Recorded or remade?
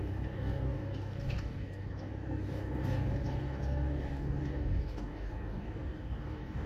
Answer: remade